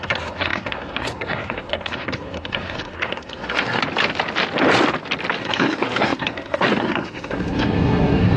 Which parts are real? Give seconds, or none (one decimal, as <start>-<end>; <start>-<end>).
3.8-5.4